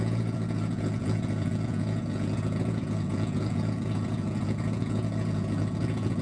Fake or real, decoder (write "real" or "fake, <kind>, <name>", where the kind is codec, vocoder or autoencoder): fake, vocoder, Vocos